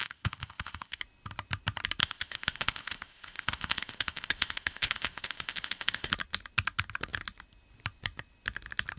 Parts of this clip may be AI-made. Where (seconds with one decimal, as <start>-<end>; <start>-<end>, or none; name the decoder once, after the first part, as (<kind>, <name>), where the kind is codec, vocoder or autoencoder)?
0.0-1.0 (codec, ZipCodec); 2.0-6.1